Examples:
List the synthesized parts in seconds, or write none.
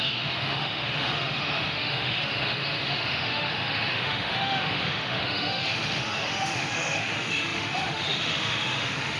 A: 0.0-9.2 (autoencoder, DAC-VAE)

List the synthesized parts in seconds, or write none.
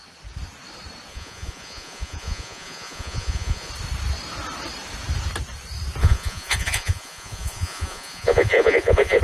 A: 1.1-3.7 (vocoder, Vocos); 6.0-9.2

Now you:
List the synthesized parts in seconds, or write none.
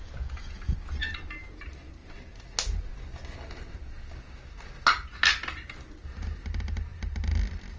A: 0.0-0.6 (vocoder, Vocos)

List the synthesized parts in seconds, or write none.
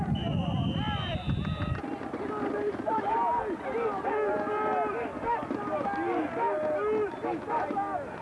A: none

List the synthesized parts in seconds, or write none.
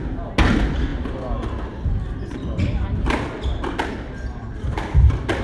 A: none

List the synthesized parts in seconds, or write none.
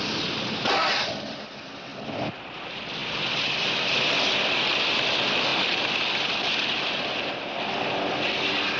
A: none